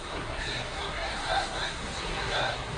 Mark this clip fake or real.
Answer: fake